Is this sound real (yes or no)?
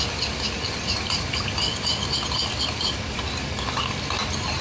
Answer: yes